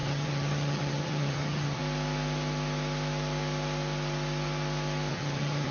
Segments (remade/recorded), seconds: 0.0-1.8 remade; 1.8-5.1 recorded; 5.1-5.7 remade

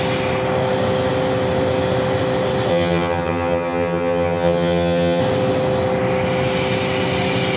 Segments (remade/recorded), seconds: 0.0-2.7 recorded; 2.7-5.2 remade; 5.2-7.6 recorded

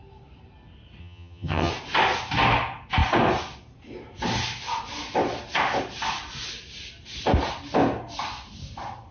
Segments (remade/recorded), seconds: 0.0-1.0 recorded; 1.0-1.7 remade; 1.7-9.1 recorded

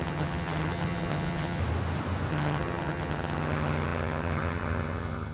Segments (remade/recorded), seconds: 0.0-1.6 remade; 1.6-2.3 recorded; 2.3-5.3 remade

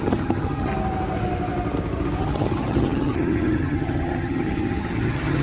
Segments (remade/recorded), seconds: 0.0-0.7 remade; 0.7-2.2 recorded; 2.2-5.4 remade

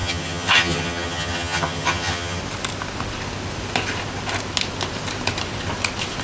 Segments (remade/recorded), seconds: 0.0-2.4 remade; 2.4-6.2 recorded